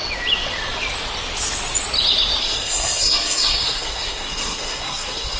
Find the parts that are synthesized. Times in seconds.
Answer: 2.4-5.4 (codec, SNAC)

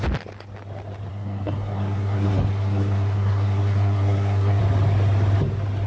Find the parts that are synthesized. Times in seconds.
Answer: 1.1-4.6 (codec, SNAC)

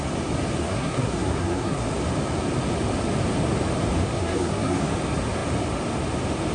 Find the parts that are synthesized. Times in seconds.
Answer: 0.6-1.9 (codec, SNAC); 4.0-4.9

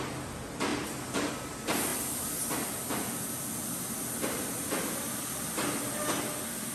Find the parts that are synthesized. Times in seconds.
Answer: none

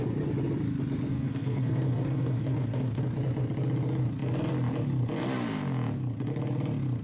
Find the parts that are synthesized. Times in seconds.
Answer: 1.1-3.0 (codec, SNAC)

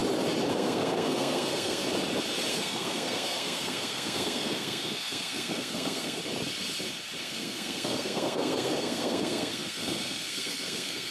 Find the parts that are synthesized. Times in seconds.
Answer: 0.5-1.8 (codec, SNAC); 2.5-6.2; 7.2-11.1

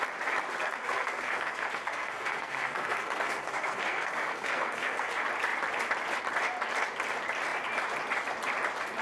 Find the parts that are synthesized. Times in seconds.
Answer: 0.6-5.1 (codec, SNAC)